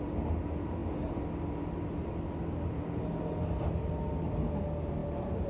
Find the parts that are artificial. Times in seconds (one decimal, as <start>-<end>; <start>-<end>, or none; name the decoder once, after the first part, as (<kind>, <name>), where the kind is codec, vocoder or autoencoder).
none